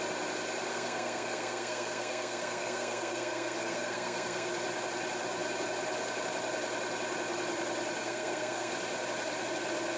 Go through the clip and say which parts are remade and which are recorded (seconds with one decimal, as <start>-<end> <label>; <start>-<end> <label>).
0.0-0.7 recorded; 0.7-4.5 remade; 4.5-8.0 recorded; 8.0-8.7 remade; 8.7-10.0 recorded